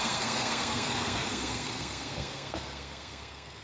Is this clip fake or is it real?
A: fake